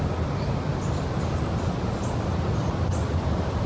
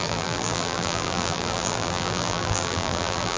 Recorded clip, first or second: first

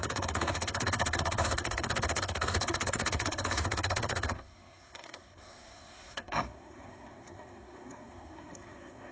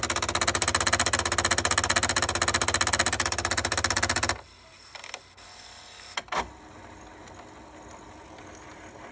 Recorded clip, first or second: second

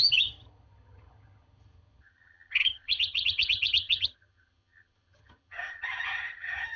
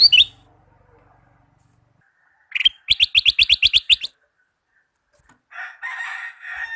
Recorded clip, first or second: second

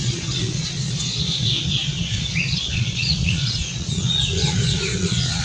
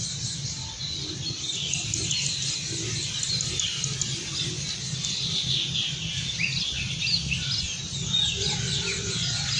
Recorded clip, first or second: second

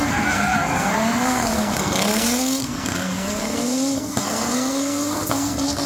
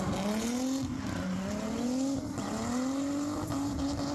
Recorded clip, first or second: second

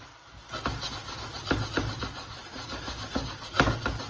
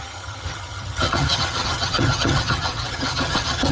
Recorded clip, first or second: first